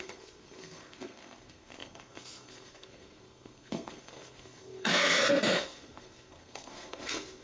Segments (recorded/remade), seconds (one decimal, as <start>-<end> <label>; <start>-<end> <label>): 0.0-7.4 remade